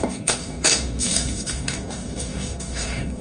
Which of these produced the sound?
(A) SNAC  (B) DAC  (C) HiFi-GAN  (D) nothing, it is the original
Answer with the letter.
B